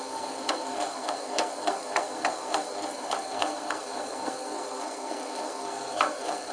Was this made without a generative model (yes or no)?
no